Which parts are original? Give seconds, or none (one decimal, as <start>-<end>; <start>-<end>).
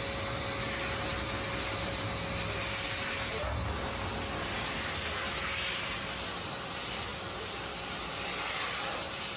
0.0-9.4